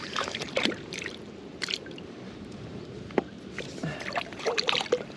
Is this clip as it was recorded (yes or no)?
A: no